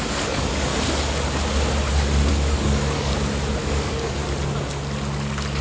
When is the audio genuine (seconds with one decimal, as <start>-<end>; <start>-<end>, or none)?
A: 0.7-2.3; 3.1-3.6; 4.2-5.6